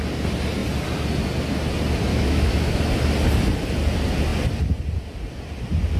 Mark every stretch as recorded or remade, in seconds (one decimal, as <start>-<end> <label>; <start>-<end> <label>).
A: 0.0-2.1 recorded; 2.1-2.8 remade; 2.8-6.0 recorded